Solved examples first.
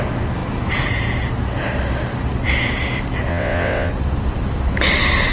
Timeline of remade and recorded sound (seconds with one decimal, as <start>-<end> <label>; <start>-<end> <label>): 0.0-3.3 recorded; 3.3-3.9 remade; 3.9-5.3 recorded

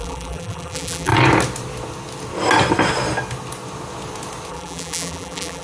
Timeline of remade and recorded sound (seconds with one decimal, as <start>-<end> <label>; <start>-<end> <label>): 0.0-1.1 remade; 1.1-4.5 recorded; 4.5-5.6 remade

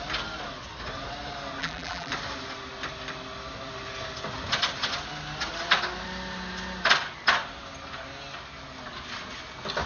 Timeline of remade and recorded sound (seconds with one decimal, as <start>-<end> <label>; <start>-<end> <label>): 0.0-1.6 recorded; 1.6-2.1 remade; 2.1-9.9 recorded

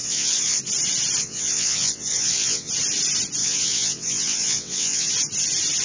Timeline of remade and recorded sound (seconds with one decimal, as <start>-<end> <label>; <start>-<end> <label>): 0.0-0.6 remade; 0.6-1.2 recorded; 1.2-2.7 remade; 2.7-3.4 recorded; 3.4-5.1 remade; 5.1-5.8 recorded

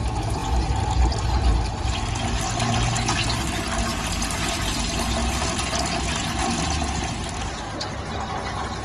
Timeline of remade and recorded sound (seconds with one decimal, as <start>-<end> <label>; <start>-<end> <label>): 0.0-8.8 recorded

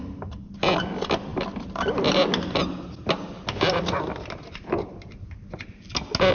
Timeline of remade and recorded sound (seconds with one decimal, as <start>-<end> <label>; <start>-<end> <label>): 0.0-6.3 recorded

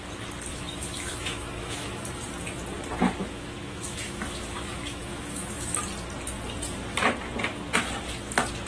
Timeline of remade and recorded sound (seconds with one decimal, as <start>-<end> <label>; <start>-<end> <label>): 0.0-0.5 recorded; 0.5-2.1 remade; 2.1-3.2 recorded; 3.2-5.8 remade; 5.8-8.7 recorded